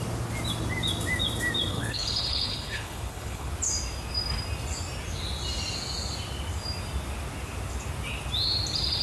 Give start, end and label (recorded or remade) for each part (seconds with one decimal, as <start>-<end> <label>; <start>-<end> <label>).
0.0-1.7 recorded; 1.7-3.5 remade; 3.5-9.0 recorded

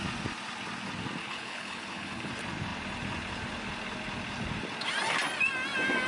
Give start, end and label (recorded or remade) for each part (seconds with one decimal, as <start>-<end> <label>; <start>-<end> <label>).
0.0-1.2 recorded; 1.2-2.3 remade; 2.3-6.1 recorded

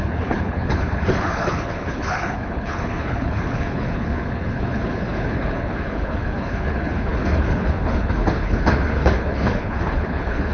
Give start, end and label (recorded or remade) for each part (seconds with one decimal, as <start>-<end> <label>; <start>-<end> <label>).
0.0-10.5 remade

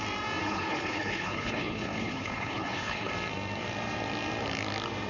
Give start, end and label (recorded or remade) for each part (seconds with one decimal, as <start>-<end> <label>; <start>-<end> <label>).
0.0-0.4 recorded; 0.4-3.1 remade; 3.1-5.1 recorded

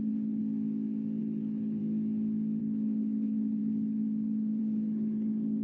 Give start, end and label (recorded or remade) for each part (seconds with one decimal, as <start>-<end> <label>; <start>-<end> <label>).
0.0-0.4 remade; 0.4-1.2 recorded; 1.2-1.8 remade; 1.8-2.6 recorded; 2.6-5.6 remade

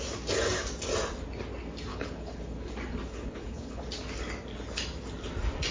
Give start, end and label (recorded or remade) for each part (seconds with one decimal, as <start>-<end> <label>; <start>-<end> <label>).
0.0-1.9 recorded; 1.9-2.7 remade; 2.7-3.1 recorded; 3.1-3.8 remade; 3.8-5.7 recorded

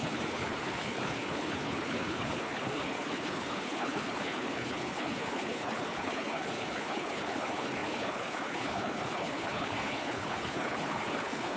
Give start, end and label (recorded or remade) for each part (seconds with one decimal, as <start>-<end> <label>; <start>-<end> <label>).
0.0-11.6 remade

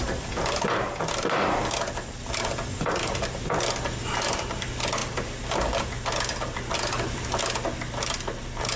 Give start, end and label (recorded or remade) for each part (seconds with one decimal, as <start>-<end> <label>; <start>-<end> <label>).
0.0-8.8 recorded